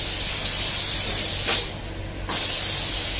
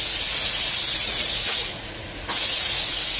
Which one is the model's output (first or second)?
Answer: second